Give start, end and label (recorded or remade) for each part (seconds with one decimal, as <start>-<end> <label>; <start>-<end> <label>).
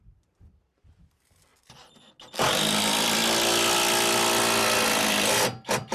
0.0-1.5 remade; 1.5-2.6 recorded; 2.6-3.2 remade; 3.2-5.0 recorded; 5.0-5.9 remade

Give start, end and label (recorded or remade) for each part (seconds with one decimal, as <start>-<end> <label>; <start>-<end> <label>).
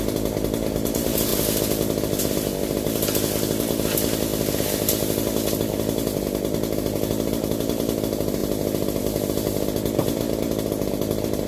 0.0-11.5 recorded